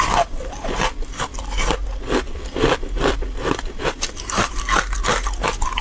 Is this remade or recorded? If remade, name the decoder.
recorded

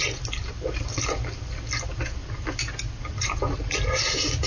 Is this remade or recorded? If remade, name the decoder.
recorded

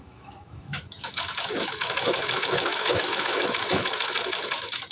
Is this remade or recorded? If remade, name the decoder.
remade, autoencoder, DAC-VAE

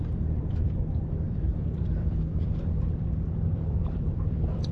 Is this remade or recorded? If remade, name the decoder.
remade, vocoder, BigVGAN v2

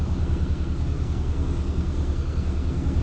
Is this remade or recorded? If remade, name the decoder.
remade, codec, SNAC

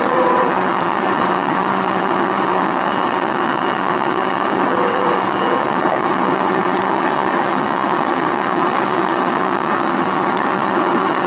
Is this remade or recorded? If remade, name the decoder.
remade, vocoder, WaveNeXt